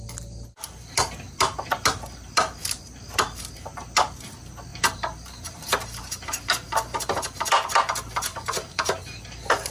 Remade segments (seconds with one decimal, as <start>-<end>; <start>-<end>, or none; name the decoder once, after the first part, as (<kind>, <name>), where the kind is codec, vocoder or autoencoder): 4.7-6.4 (vocoder, BigVGAN v2); 8.3-9.2